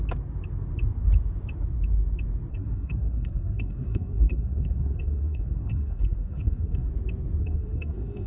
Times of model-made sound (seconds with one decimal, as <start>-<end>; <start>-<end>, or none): 2.5-6.9; 7.4-8.3